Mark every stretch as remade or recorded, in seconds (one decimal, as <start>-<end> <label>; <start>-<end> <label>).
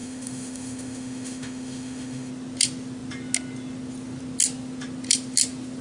0.0-2.3 remade; 2.3-5.8 recorded